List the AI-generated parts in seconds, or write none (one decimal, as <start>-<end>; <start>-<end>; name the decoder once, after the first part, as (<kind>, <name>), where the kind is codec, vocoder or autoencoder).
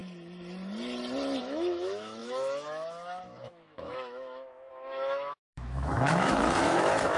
1.4-7.2 (autoencoder, DAC-VAE)